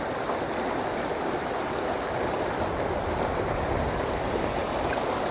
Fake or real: real